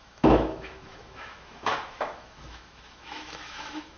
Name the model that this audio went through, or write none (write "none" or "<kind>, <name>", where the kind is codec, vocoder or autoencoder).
autoencoder, DAC-VAE